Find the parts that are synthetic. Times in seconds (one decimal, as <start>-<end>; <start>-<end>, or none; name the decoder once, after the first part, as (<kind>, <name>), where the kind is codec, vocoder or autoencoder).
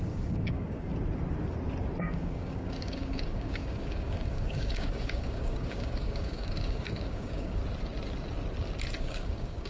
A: 0.0-0.9 (codec, DAC); 2.0-7.6; 9.0-9.7